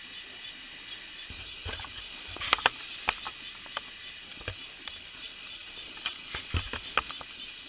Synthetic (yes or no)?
no